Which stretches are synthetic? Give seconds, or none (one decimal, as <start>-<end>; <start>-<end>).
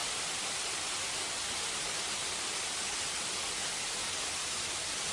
none